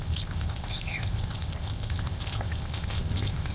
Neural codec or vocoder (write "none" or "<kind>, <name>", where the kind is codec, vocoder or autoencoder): codec, ZipCodec